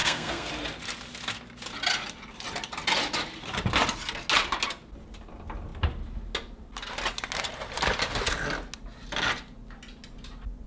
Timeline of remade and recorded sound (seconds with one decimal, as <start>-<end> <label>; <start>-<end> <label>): 0.0-0.5 remade; 0.5-10.7 recorded